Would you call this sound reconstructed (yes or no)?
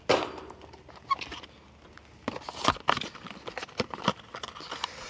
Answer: no